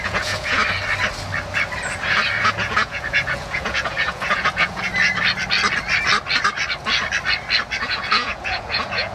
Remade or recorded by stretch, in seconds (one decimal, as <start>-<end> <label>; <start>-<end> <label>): 0.0-0.6 remade; 0.6-2.4 recorded; 2.4-4.9 remade; 4.9-7.8 recorded; 7.8-9.1 remade